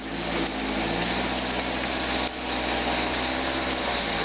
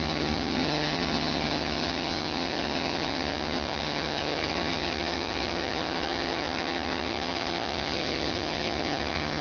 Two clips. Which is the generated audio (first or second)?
second